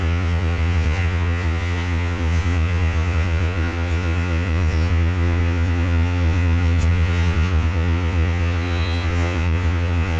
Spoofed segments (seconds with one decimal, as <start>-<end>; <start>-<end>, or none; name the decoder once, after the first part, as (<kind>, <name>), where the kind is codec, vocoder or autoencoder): 0.0-10.2 (vocoder, Vocos)